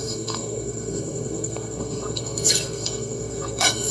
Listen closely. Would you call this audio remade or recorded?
remade